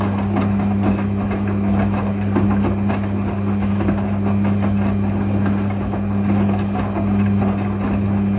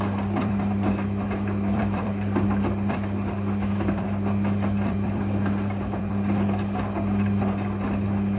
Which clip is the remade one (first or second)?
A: second